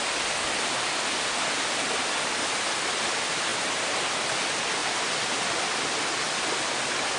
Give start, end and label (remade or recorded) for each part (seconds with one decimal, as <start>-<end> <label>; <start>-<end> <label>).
0.0-3.5 recorded; 3.5-4.0 remade; 4.0-4.8 recorded; 4.8-6.5 remade; 6.5-7.2 recorded